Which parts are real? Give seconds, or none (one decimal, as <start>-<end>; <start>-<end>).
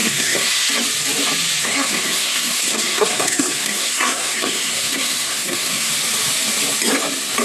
0.7-1.6; 5.9-7.4